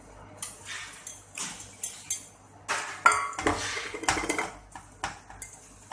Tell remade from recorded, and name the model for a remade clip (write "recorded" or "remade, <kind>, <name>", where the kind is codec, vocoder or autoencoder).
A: recorded